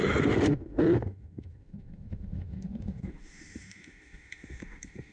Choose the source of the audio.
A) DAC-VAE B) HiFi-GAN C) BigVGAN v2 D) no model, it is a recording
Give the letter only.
A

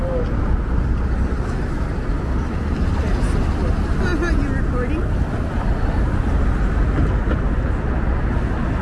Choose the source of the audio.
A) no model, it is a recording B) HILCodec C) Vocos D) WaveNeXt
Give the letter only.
A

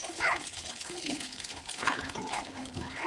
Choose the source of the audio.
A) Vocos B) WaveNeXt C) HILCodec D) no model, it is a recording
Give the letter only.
C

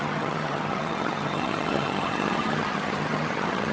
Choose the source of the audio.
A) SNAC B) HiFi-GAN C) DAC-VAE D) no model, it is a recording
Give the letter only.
B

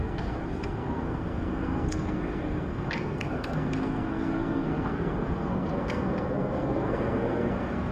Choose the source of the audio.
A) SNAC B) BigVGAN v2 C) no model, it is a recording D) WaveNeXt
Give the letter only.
A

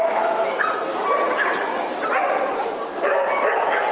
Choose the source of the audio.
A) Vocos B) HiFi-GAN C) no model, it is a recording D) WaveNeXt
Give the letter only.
C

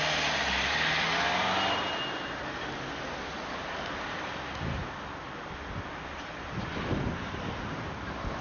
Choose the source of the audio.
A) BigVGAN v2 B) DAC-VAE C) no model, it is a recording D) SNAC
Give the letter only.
C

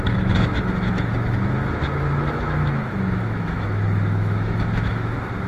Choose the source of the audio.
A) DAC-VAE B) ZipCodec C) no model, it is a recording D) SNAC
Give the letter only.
A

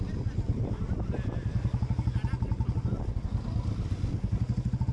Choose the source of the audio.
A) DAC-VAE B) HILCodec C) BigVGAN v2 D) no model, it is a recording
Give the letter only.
D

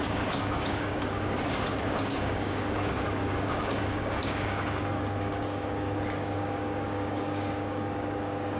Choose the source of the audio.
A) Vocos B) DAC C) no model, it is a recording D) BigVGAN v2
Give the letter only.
B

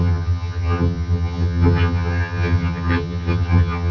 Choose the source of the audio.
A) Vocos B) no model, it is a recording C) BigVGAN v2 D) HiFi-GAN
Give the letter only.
D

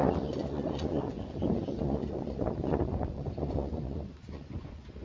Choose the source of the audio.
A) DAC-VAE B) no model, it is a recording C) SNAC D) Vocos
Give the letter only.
D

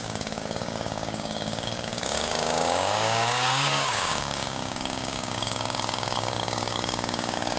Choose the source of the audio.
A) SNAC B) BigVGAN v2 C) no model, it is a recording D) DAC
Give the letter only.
D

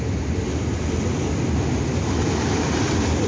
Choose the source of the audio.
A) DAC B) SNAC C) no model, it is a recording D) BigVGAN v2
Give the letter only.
C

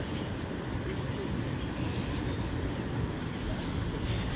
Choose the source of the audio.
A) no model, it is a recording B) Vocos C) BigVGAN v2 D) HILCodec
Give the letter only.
A